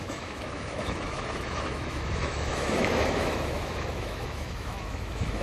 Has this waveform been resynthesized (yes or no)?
yes